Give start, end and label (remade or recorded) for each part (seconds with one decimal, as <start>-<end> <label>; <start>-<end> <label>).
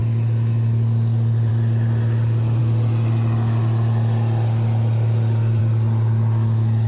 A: 0.0-6.9 recorded